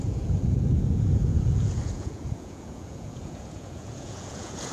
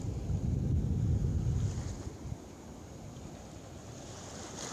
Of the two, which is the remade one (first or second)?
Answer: first